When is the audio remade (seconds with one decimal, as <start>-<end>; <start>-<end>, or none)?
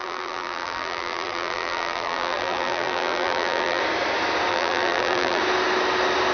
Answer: 0.0-3.8; 4.5-5.4